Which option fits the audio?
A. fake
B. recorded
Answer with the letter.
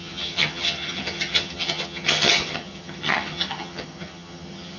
A